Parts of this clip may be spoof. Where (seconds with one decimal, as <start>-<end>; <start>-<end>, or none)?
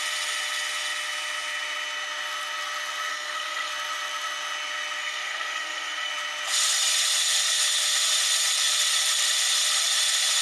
3.1-3.7; 5.0-6.1